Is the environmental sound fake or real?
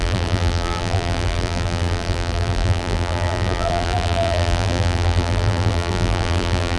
fake